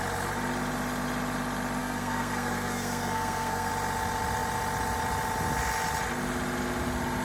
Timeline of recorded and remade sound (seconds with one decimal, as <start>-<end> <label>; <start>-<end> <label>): 0.0-1.8 recorded; 1.8-3.7 remade; 3.7-7.2 recorded